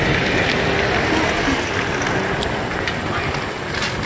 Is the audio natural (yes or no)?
yes